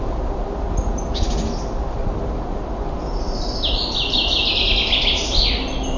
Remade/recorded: recorded